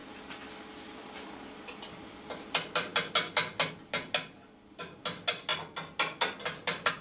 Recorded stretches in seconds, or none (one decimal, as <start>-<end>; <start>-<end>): 0.0-7.0